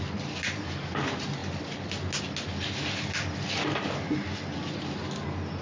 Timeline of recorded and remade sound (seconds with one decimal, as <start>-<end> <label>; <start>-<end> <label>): 0.0-5.6 recorded